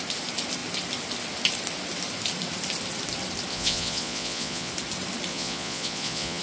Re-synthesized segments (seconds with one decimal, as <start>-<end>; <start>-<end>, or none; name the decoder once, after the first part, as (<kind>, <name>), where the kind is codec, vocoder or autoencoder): 3.5-4.7 (vocoder, Vocos); 5.3-6.4